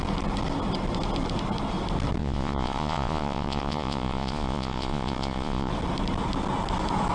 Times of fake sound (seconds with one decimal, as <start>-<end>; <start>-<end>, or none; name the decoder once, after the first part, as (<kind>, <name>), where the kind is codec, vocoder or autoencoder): 2.2-5.7 (vocoder, Vocos)